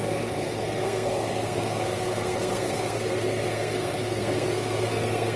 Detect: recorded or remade remade